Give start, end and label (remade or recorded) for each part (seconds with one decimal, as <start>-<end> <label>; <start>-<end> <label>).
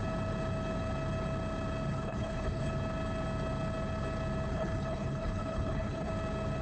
0.0-1.9 recorded; 1.9-2.7 remade; 2.7-4.5 recorded; 4.5-6.1 remade; 6.1-6.6 recorded